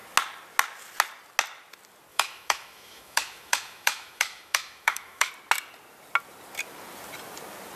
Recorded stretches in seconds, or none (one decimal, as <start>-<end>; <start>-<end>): 0.0-2.1; 5.3-7.8